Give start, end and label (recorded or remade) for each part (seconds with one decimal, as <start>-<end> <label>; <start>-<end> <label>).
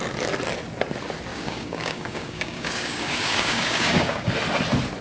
0.0-1.3 recorded; 1.3-4.3 remade; 4.3-5.0 recorded